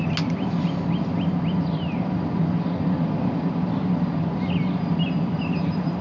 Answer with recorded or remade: recorded